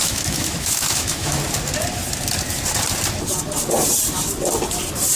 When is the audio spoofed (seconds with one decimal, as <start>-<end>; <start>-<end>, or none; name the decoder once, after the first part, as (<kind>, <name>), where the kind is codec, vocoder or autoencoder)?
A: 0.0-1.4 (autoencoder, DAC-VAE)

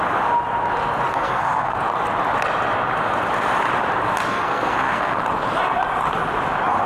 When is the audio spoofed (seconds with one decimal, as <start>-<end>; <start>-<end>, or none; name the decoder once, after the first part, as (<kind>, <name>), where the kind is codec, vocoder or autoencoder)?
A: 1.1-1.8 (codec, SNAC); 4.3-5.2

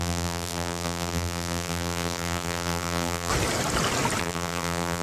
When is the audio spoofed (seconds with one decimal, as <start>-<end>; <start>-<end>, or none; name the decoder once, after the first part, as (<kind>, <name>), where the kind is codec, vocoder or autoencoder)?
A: 0.0-3.3 (vocoder, BigVGAN v2); 4.2-5.0

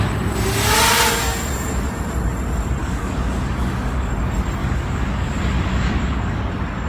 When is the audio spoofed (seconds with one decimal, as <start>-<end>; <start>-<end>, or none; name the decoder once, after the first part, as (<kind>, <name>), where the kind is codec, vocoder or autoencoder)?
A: 2.8-4.1 (codec, DAC); 4.6-6.4

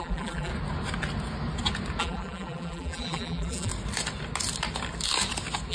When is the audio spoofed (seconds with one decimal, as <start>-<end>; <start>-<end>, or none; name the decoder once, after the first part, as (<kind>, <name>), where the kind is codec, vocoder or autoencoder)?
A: 0.0-0.5 (vocoder, BigVGAN v2); 2.0-3.7

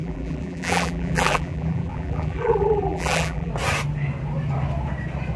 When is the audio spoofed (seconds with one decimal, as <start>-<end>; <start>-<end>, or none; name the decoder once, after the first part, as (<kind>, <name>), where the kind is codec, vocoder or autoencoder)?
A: 0.0-3.5 (vocoder, BigVGAN v2)